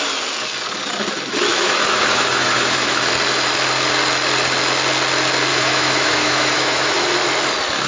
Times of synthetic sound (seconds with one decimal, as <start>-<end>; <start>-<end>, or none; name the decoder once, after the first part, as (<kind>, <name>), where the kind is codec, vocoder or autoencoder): 1.5-3.0 (autoencoder, DAC-VAE); 5.5-7.1